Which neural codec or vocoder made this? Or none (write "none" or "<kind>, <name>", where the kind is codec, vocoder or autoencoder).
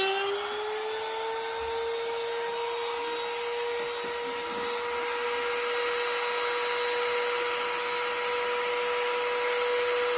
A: none